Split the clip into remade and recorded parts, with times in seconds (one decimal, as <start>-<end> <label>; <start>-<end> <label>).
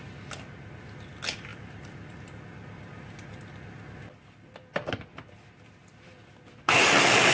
0.0-7.3 recorded